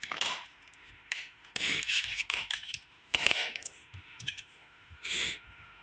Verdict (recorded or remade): remade